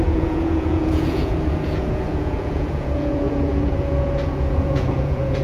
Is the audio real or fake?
fake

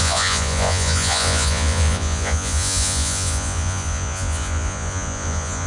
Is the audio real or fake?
fake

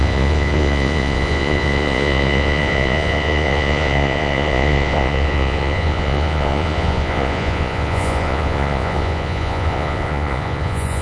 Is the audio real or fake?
fake